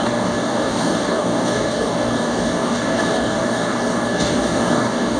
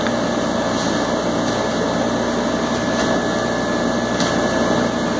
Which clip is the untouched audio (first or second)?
second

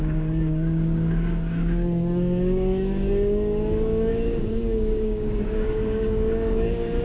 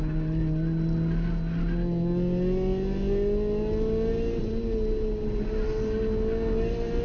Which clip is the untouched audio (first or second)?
second